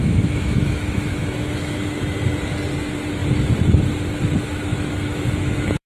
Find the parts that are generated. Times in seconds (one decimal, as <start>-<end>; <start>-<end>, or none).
0.0-2.0; 4.7-5.9